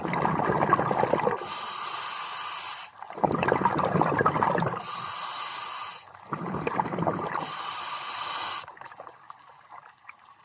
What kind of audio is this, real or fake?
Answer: real